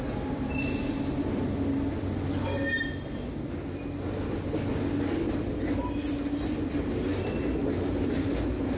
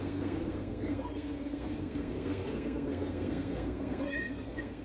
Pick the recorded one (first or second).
first